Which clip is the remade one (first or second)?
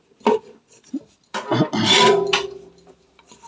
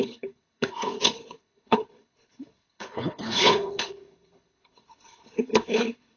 second